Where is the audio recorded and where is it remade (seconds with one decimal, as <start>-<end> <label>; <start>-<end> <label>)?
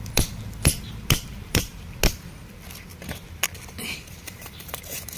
0.0-1.7 remade; 1.7-3.8 recorded; 3.8-5.2 remade